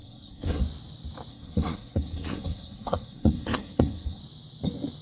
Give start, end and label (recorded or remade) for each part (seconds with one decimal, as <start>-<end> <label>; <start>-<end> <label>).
0.0-0.6 remade; 0.6-1.3 recorded; 1.3-4.2 remade; 4.2-5.0 recorded